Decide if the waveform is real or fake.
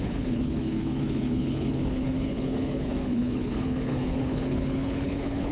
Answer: fake